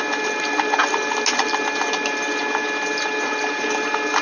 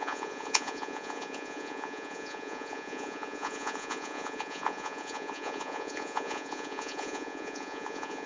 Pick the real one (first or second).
first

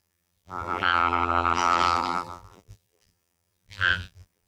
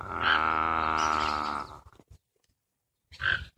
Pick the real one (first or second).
second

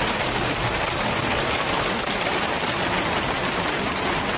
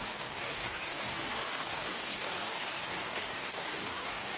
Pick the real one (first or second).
first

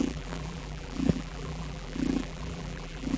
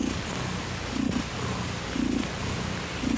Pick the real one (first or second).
second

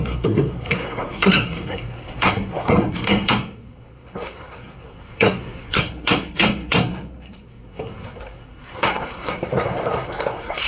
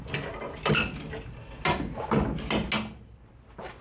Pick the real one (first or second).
second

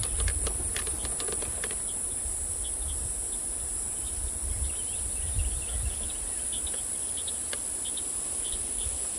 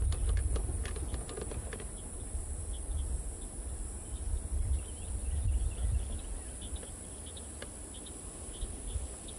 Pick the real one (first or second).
second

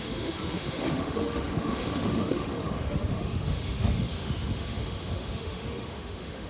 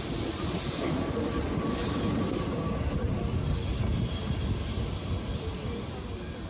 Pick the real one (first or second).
second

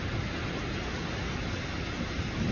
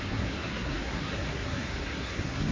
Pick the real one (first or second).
first